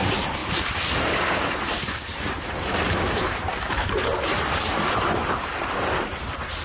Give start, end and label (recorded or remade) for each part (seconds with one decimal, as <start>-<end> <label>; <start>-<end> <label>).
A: 0.0-0.4 recorded; 0.4-4.4 remade; 4.4-6.6 recorded

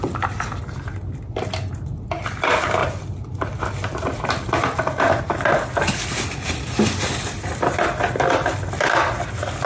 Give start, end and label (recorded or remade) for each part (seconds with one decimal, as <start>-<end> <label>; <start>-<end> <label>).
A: 0.0-2.8 recorded; 2.8-4.4 remade; 4.4-9.7 recorded

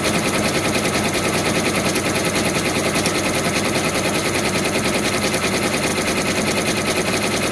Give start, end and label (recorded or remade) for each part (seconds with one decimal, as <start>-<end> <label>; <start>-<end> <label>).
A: 0.0-1.4 remade; 1.4-5.1 recorded; 5.1-5.9 remade; 5.9-7.1 recorded; 7.1-7.5 remade

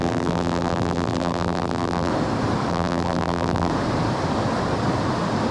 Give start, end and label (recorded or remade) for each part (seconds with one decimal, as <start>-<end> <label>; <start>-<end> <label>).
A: 0.0-2.1 remade; 2.1-2.7 recorded; 2.7-3.7 remade; 3.7-5.5 recorded

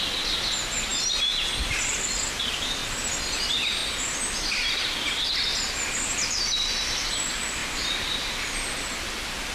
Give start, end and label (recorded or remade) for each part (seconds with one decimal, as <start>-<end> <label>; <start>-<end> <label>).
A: 0.0-0.9 remade; 0.9-2.4 recorded; 2.4-2.8 remade; 2.8-3.4 recorded; 3.4-3.8 remade; 3.8-5.2 recorded; 5.2-9.5 remade

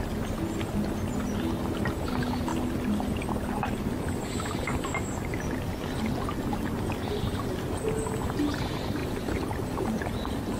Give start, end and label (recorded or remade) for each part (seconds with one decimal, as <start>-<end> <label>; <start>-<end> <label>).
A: 0.0-10.6 recorded

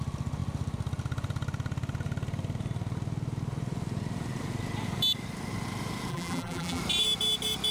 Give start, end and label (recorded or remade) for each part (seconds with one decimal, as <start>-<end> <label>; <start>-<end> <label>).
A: 0.0-6.1 recorded; 6.1-6.8 remade; 6.8-7.7 recorded